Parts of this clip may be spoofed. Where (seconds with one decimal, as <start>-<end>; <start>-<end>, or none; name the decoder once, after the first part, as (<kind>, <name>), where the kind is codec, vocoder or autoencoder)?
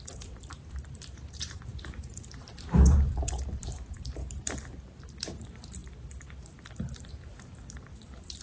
0.0-4.2 (vocoder, BigVGAN v2); 5.0-8.4